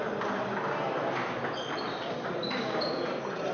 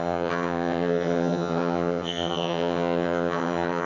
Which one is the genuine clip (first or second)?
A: first